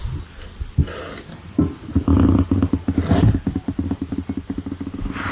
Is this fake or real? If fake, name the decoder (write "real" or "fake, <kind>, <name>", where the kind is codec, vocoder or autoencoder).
real